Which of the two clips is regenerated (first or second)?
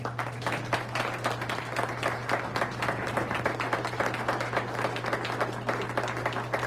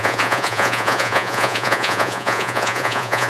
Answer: second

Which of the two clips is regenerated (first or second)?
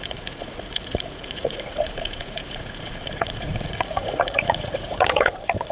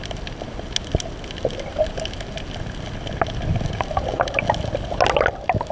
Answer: first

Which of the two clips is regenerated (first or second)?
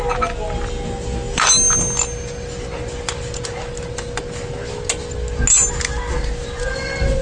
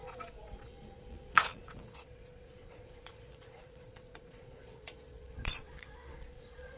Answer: second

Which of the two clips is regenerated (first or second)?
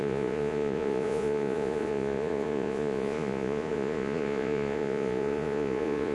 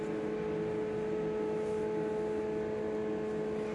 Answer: first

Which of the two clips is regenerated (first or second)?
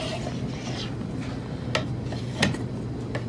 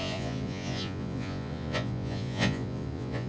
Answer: second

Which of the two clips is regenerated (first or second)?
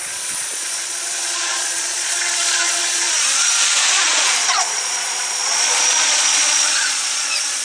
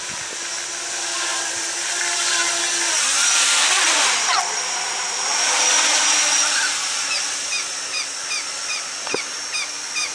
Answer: first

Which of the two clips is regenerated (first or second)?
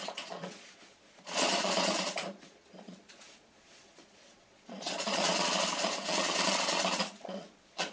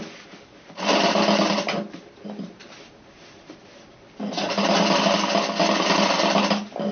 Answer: first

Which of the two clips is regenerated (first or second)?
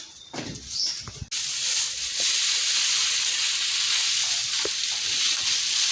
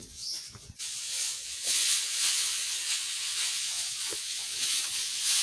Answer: second